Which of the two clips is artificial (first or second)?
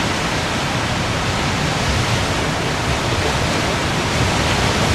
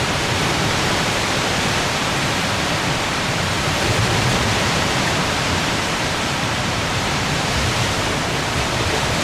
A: second